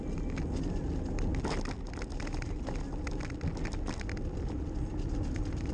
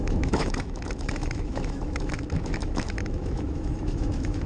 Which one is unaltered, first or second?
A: first